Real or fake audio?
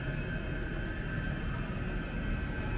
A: real